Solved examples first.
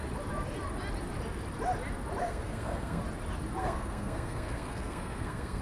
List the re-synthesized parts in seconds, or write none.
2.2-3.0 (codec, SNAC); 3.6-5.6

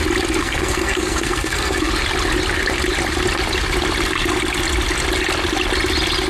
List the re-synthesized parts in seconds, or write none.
0.4-1.9 (codec, SNAC)